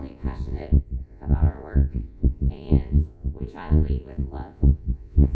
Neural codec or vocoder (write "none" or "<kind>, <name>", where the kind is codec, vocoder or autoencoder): vocoder, Vocos